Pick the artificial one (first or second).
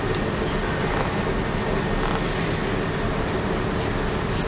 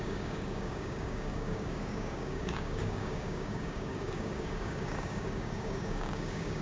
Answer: second